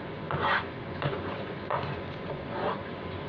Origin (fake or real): fake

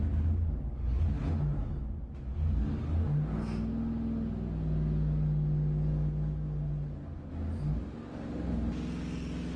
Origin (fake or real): real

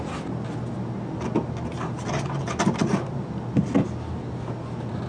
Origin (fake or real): real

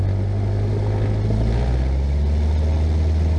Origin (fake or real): real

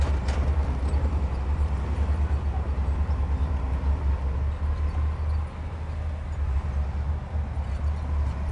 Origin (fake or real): real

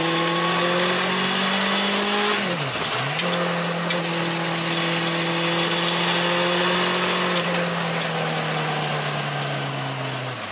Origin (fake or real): real